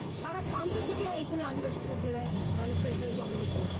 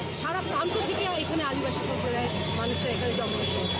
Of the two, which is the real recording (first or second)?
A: second